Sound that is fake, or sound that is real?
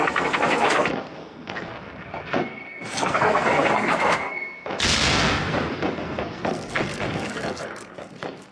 fake